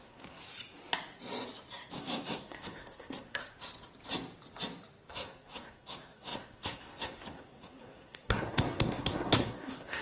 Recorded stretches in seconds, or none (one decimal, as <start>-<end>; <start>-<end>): 0.4-1.9; 3.5-5.1